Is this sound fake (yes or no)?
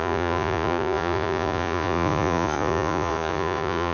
yes